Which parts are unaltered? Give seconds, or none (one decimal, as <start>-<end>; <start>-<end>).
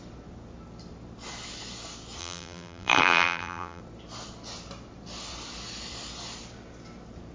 0.0-2.2; 3.8-7.3